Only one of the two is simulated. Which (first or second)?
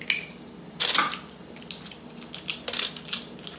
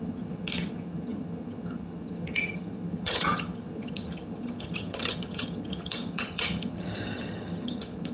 second